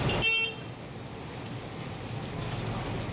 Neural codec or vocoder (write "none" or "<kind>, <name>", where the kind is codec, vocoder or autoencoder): none